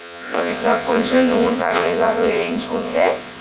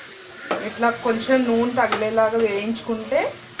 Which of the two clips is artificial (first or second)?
first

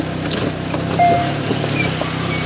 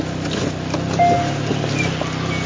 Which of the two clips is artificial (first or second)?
first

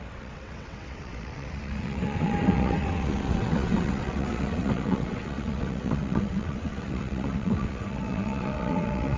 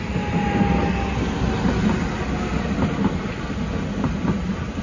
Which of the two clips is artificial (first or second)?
first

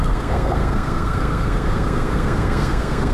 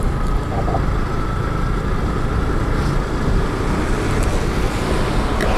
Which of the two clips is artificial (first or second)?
first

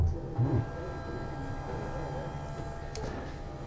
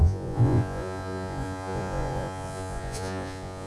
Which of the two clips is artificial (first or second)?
second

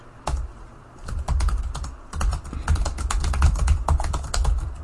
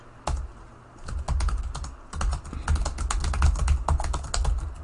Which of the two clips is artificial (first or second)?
first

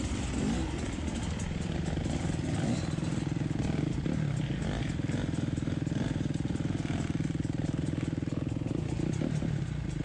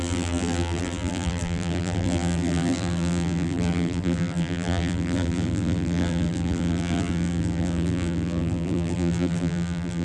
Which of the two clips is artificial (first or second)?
second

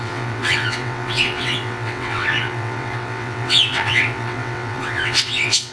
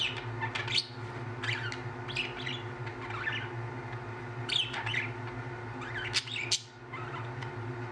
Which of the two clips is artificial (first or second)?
first